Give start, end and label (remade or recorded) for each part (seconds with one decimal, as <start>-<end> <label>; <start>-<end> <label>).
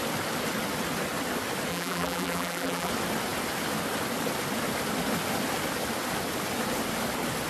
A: 0.0-1.7 recorded; 1.7-2.9 remade; 2.9-7.5 recorded